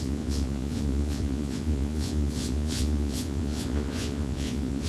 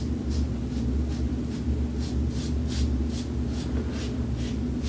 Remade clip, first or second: first